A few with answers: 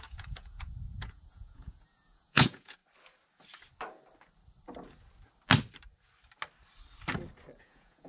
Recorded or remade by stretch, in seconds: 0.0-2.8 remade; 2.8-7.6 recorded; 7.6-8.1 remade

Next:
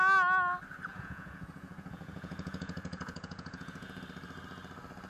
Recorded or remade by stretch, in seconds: 0.0-0.9 recorded; 0.9-4.0 remade; 4.0-5.1 recorded

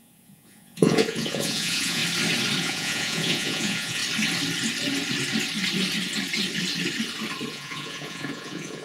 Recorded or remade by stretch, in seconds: 0.0-2.0 remade; 2.0-2.6 recorded; 2.6-4.0 remade; 4.0-7.5 recorded; 7.5-8.8 remade

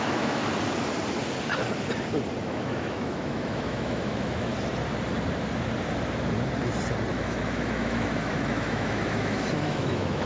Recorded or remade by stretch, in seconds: 0.0-0.4 remade; 0.4-2.4 recorded; 2.4-4.5 remade; 4.5-7.1 recorded; 7.1-10.3 remade

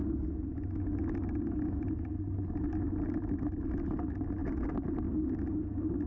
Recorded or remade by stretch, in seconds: 0.0-6.1 recorded

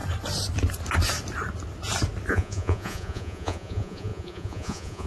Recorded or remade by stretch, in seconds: 0.0-2.3 recorded; 2.3-5.1 remade

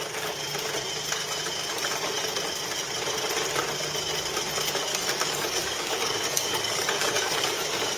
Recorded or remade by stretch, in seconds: 0.0-4.9 recorded; 4.9-7.6 remade; 7.6-8.0 recorded